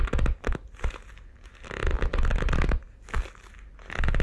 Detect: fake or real real